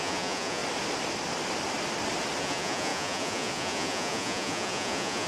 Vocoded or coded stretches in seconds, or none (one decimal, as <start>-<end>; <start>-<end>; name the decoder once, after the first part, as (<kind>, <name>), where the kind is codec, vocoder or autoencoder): 0.0-0.6 (vocoder, Vocos); 2.4-5.3

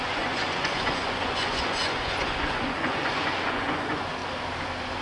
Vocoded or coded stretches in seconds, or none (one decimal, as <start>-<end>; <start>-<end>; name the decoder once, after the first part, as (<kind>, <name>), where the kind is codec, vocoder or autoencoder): 0.0-4.2 (vocoder, Vocos)

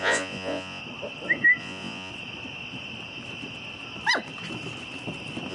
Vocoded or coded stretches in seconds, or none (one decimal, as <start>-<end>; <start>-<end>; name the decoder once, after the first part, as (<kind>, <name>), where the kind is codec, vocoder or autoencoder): 0.0-0.8 (vocoder, Vocos); 1.6-2.1

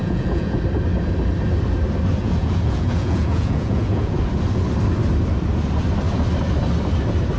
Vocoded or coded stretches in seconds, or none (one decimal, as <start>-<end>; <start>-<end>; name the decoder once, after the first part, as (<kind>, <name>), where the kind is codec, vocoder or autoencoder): 0.0-0.6 (vocoder, Vocos); 2.2-4.2

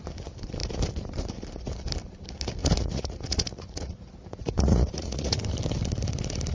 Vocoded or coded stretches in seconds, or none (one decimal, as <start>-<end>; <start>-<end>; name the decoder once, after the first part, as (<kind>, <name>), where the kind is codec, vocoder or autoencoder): 2.6-4.0 (vocoder, Vocos); 4.4-5.4

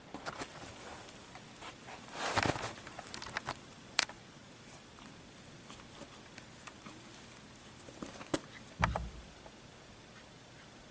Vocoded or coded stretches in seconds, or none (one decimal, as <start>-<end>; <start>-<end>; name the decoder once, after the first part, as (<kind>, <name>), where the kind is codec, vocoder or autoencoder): 3.7-4.4 (vocoder, Vocos)

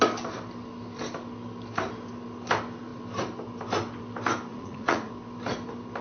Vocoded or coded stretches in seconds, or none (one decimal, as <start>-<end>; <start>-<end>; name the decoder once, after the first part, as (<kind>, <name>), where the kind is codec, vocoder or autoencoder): 4.5-5.1 (vocoder, Vocos)